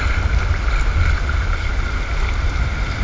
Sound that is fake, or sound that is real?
real